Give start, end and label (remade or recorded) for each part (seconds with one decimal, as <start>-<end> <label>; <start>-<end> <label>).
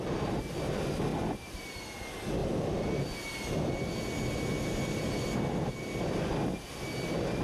0.0-1.1 recorded; 1.1-1.6 remade; 1.6-7.4 recorded